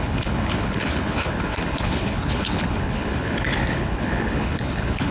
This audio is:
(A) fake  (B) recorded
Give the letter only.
A